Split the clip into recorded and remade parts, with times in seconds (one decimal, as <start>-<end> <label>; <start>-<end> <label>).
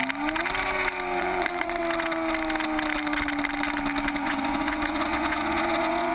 0.0-1.2 recorded; 1.2-1.8 remade; 1.8-4.1 recorded; 4.1-6.1 remade